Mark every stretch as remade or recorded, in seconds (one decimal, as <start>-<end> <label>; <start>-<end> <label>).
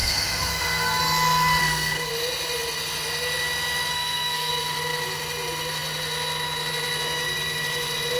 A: 0.0-1.0 remade; 1.0-1.6 recorded; 1.6-2.1 remade; 2.1-3.9 recorded; 3.9-4.5 remade; 4.5-8.2 recorded